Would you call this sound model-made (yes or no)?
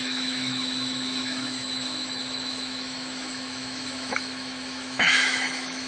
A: yes